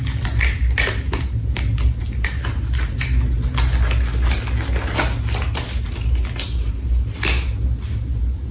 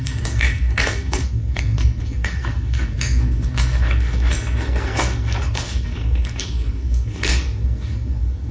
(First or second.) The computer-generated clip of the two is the second